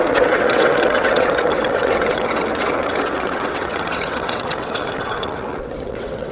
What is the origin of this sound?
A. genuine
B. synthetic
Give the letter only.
B